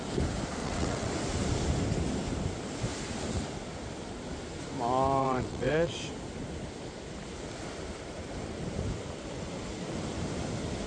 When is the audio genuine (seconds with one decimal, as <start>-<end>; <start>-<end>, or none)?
0.0-0.6; 1.1-5.2; 6.0-10.9